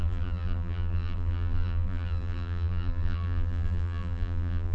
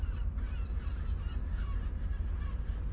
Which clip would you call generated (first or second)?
first